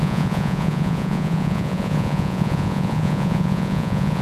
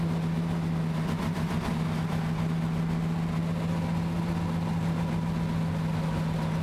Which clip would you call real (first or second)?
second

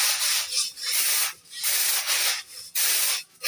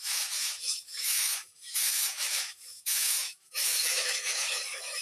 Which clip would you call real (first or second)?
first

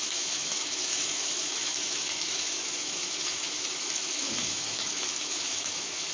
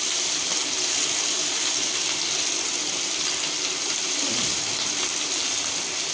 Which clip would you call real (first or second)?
second